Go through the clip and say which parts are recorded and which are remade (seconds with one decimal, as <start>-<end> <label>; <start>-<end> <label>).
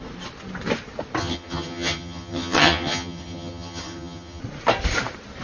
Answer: 0.0-1.2 recorded; 1.2-4.4 remade; 4.4-5.4 recorded